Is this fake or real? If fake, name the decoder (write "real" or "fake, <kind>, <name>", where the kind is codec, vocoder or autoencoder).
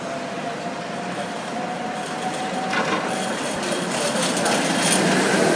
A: real